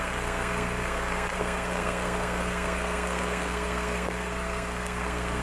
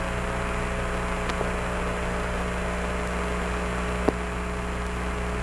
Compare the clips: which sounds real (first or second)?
second